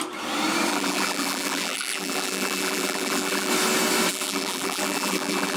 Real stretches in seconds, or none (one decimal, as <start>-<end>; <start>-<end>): 0.0-0.7; 3.5-4.1